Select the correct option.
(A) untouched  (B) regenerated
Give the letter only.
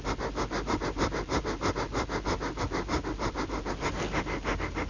A